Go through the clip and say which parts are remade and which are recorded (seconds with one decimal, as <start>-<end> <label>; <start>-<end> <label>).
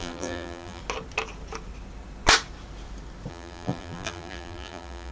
0.0-0.8 remade; 0.8-3.3 recorded; 3.3-5.1 remade